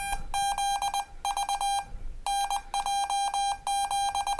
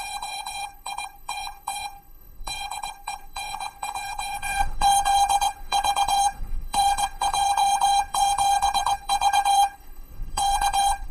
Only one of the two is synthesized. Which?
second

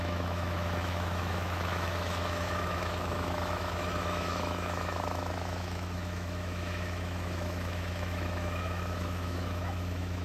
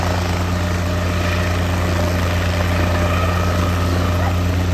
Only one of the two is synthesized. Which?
first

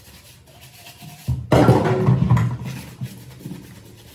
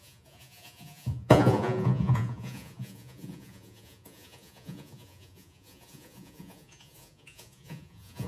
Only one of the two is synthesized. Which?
second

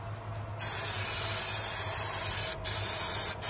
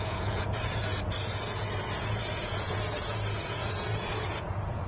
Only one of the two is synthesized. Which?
second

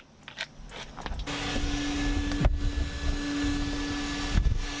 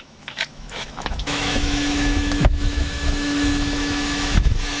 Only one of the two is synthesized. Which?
second